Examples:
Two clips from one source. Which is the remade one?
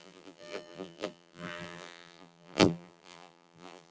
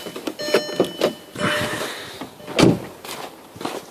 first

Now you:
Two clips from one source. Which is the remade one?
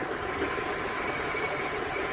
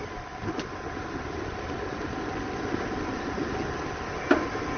first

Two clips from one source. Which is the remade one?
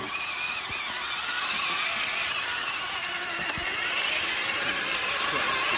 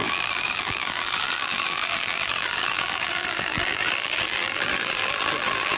second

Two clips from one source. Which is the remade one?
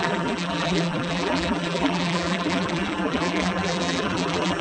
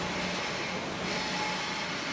first